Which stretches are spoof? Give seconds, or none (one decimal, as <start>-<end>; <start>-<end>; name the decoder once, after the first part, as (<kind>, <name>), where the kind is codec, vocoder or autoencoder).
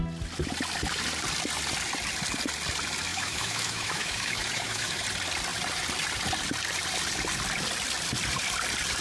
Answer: 3.1-5.0 (autoencoder, DAC-VAE)